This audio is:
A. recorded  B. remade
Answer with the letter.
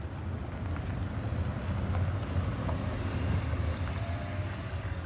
A